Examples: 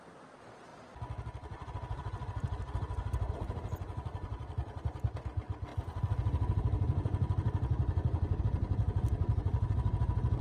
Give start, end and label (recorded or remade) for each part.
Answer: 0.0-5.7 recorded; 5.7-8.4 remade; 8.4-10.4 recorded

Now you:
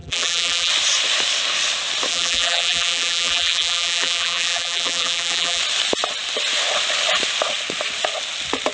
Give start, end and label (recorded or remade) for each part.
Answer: 0.0-0.7 remade; 0.7-2.1 recorded; 2.1-5.6 remade; 5.6-8.7 recorded

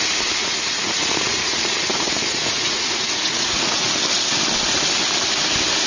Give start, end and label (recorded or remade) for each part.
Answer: 0.0-0.4 recorded; 0.4-3.9 remade; 3.9-5.9 recorded

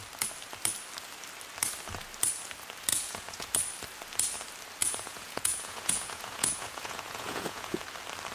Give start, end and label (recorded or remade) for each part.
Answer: 0.0-2.9 recorded; 2.9-3.5 remade; 3.5-4.8 recorded; 4.8-7.8 remade; 7.8-8.3 recorded